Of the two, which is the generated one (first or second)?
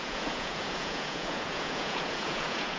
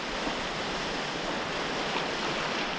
first